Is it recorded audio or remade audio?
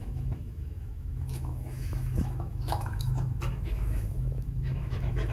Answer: remade